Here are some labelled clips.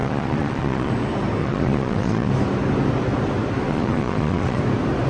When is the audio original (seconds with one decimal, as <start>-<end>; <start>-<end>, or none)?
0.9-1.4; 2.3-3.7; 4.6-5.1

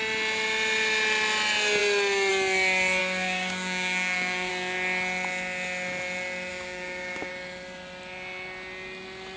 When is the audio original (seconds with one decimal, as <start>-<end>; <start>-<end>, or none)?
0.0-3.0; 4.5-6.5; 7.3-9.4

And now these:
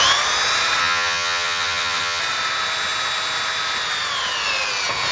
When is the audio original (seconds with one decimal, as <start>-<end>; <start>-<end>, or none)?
0.0-0.8; 2.2-5.1

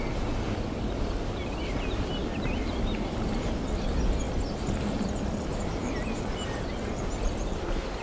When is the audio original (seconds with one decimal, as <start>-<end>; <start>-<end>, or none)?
0.0-8.0

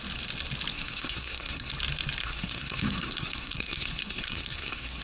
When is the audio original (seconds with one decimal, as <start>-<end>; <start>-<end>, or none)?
0.0-0.7; 1.7-2.2

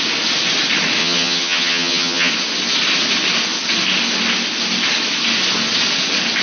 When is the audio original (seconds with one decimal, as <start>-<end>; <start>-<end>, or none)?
0.0-1.0; 2.3-6.4